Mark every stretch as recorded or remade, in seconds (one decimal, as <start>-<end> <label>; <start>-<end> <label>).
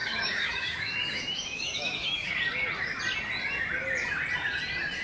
0.0-2.3 remade; 2.3-5.0 recorded